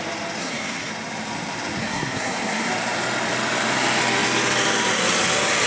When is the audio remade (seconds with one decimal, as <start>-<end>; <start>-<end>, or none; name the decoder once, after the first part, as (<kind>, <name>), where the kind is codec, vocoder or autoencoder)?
0.4-0.9 (codec, SNAC); 1.8-2.7